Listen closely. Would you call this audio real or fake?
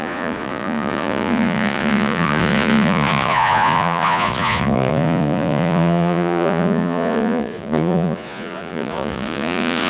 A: fake